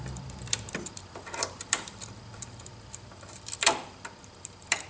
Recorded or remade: remade